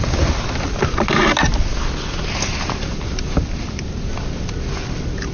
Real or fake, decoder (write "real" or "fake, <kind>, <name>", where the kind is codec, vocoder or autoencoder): real